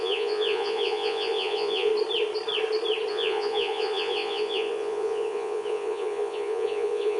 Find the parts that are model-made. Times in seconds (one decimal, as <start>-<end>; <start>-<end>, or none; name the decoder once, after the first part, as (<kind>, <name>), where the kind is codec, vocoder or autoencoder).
0.0-1.9 (vocoder, Vocos); 3.1-7.2